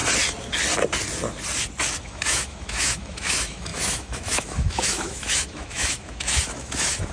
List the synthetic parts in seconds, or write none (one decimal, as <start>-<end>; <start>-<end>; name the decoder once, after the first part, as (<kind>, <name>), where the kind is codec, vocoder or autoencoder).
2.0-7.1 (autoencoder, DAC-VAE)